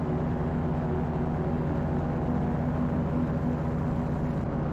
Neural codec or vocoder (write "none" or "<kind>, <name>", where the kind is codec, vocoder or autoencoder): none